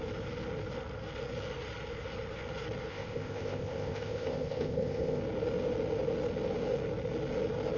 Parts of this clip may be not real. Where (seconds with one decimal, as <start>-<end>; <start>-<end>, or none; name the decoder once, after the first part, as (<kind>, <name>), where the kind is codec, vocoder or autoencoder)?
2.9-5.2 (codec, ZipCodec)